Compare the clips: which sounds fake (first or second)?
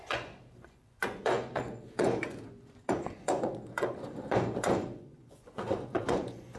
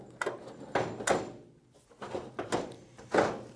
first